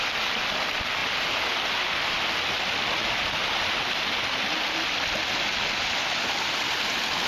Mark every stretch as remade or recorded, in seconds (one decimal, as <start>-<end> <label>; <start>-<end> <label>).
0.0-7.3 recorded